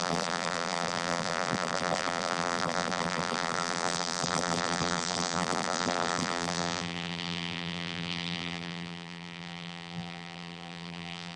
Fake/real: fake